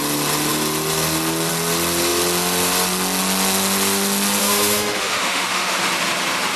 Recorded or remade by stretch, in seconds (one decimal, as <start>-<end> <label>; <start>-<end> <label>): 0.0-4.4 recorded; 4.4-5.8 remade; 5.8-6.6 recorded